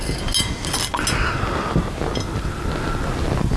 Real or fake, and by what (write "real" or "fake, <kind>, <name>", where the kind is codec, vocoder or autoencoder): real